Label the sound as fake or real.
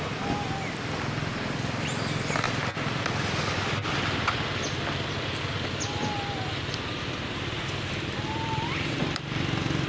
real